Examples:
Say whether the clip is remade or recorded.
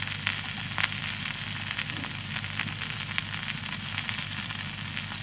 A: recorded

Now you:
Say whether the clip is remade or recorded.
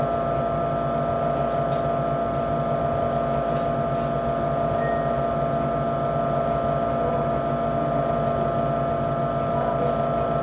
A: recorded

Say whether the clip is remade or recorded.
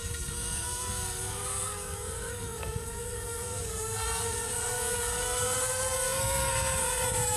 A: remade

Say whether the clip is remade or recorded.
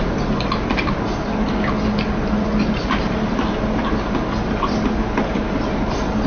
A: recorded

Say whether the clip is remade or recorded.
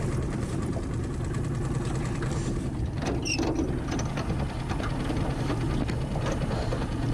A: recorded